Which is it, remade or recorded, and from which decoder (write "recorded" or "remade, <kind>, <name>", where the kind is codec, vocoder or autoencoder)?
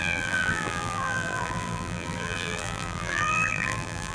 remade, vocoder, BigVGAN v2